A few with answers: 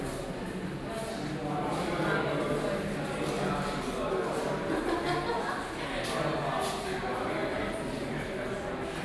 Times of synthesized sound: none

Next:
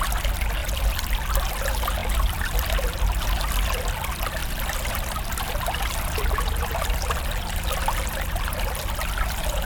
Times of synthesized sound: 0.6-1.4 (vocoder, BigVGAN v2); 2.0-3.2; 4.4-4.9